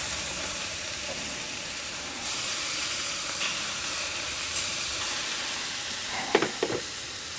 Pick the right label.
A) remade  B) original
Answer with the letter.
A